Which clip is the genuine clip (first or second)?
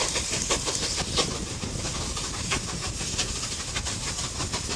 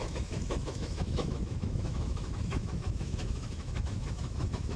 first